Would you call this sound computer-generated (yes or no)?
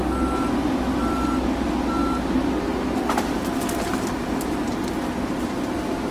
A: no